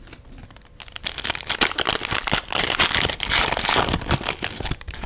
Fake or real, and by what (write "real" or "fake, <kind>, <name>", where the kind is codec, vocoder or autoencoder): real